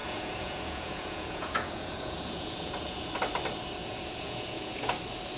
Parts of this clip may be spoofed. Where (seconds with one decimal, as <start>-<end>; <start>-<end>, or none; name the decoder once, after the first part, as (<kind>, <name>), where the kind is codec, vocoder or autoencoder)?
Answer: 0.0-3.1 (vocoder, Vocos); 3.8-4.9

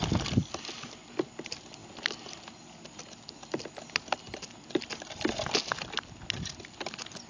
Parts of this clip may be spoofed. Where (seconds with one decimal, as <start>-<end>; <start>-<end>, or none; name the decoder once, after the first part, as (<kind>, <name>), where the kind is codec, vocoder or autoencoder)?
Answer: none

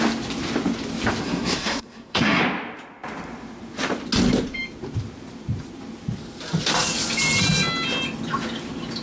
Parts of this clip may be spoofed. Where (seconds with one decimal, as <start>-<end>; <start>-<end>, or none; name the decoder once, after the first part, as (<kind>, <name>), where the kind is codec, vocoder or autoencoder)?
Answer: 1.2-2.4 (codec, SNAC)

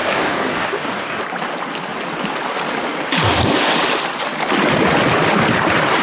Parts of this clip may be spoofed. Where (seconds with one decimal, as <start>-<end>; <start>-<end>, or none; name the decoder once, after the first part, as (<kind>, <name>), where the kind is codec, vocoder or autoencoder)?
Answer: 0.0-1.2 (codec, DAC)